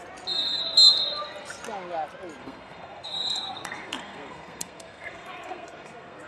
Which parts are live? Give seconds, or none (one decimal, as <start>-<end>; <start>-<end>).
0.0-2.4